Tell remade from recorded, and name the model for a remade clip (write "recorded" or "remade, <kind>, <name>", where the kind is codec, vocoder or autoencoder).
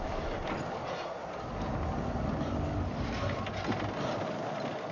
recorded